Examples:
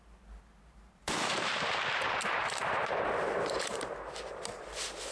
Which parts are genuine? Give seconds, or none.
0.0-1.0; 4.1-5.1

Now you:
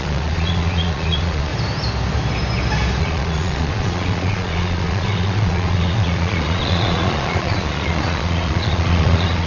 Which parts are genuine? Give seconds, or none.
1.5-3.0